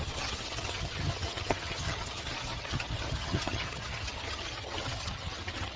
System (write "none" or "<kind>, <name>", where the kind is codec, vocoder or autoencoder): vocoder, HiFi-GAN